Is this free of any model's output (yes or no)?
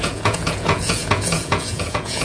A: no